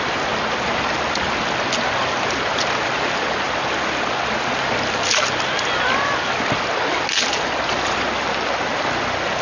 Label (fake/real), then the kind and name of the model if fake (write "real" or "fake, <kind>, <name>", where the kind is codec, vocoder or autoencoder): real